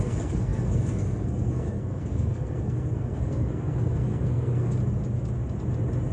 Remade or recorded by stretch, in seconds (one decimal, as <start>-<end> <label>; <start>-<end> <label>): 0.0-4.8 remade; 4.8-6.1 recorded